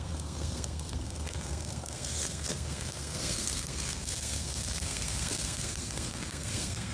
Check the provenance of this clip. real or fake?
fake